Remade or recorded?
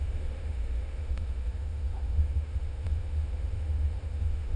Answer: remade